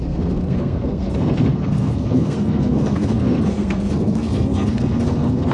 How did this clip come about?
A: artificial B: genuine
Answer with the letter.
A